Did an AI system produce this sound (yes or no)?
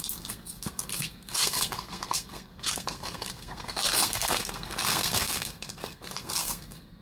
yes